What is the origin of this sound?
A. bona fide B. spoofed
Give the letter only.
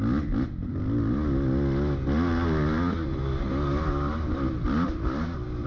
A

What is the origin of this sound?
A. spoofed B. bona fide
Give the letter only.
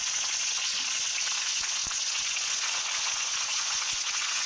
A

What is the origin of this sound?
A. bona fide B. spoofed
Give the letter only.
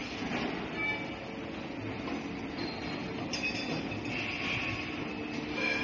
A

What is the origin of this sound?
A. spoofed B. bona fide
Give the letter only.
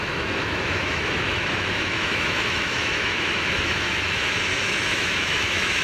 A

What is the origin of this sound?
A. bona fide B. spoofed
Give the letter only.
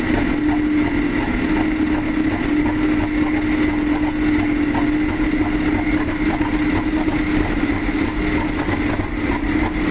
A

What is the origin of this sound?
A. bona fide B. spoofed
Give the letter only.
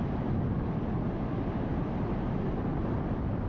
A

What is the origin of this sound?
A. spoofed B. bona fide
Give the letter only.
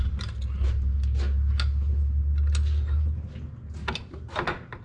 B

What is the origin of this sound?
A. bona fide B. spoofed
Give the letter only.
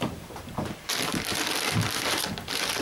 B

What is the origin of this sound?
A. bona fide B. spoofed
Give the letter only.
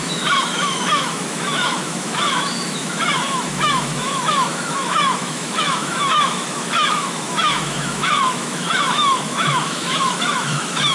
B